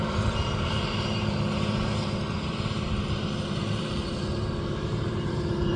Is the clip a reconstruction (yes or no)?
yes